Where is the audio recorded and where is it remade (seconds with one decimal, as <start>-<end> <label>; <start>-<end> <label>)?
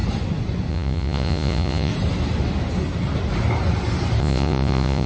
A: 0.0-0.7 recorded; 0.7-1.9 remade; 1.9-4.2 recorded; 4.2-5.1 remade